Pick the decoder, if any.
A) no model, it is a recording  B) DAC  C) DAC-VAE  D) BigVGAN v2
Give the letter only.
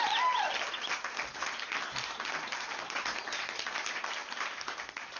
A